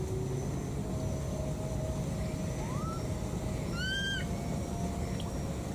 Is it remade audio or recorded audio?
recorded